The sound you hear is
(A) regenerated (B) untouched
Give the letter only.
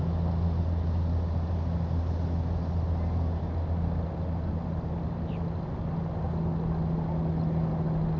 B